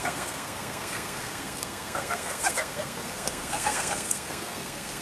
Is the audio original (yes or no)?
no